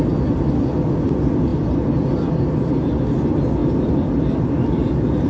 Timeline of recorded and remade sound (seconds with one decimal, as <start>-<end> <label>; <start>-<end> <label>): 0.0-5.3 recorded